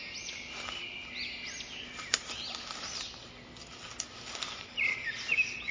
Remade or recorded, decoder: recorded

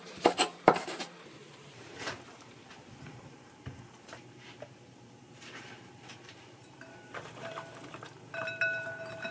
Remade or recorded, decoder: remade, vocoder, BigVGAN v2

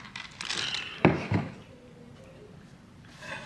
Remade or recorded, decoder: recorded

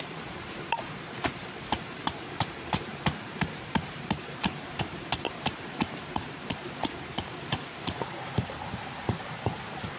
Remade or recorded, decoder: remade, vocoder, BigVGAN v2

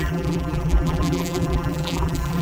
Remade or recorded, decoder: remade, vocoder, BigVGAN v2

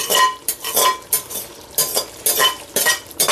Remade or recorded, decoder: recorded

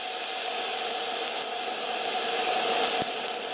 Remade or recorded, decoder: recorded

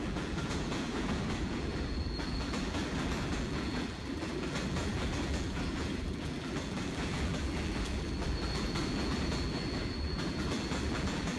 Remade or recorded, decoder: remade, vocoder, BigVGAN v2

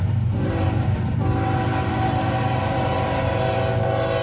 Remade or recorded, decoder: remade, vocoder, BigVGAN v2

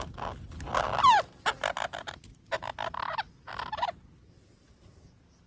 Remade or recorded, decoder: recorded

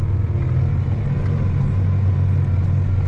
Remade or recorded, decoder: recorded